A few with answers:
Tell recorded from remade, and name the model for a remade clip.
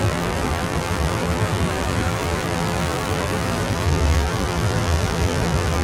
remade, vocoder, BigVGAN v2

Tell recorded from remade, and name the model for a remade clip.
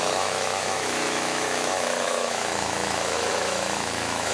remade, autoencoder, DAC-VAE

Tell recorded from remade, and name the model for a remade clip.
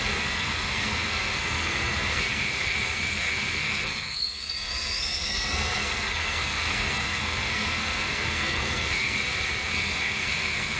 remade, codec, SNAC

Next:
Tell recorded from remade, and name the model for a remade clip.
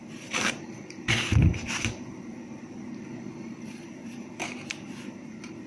remade, vocoder, BigVGAN v2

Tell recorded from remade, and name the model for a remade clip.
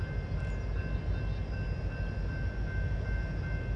recorded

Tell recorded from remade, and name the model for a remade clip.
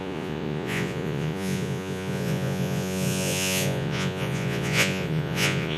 remade, vocoder, Vocos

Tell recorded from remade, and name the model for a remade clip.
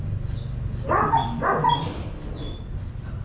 recorded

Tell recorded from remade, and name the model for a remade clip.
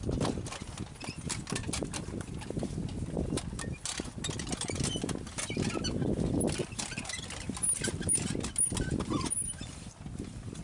recorded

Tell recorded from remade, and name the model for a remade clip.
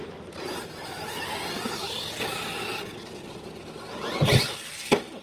recorded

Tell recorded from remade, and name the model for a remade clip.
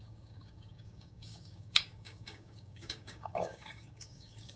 remade, codec, DAC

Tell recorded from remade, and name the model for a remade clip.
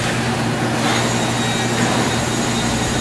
recorded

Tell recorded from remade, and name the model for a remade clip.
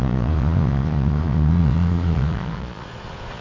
remade, vocoder, Vocos